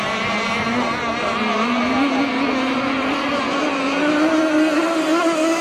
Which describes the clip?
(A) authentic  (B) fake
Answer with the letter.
A